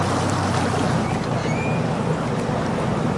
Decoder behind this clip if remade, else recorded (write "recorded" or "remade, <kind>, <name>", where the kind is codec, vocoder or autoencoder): recorded